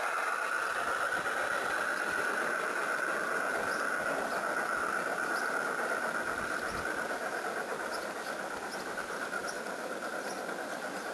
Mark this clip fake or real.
real